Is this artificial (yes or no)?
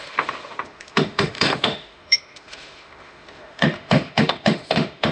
yes